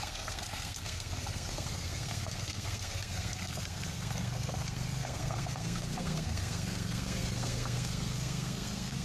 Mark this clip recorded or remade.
remade